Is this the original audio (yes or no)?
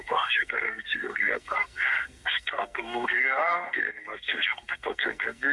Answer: no